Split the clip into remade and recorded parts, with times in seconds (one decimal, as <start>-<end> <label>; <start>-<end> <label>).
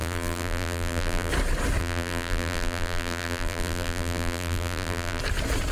0.0-1.3 remade; 1.3-1.8 recorded; 1.8-5.2 remade; 5.2-5.7 recorded